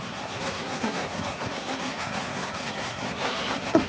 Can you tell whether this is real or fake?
fake